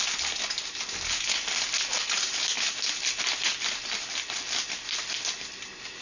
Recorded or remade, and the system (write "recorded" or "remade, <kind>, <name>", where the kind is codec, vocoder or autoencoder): recorded